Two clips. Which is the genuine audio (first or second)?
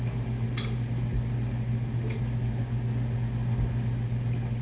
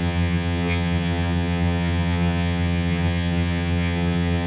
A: first